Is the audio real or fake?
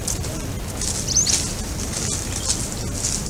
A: real